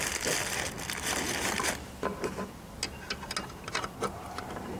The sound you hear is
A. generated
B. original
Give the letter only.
B